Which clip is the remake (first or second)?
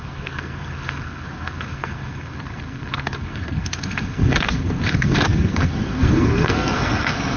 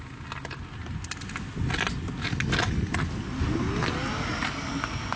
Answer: first